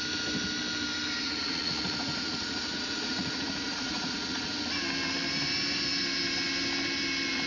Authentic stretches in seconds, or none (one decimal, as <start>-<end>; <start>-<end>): 0.0-1.2; 4.6-7.5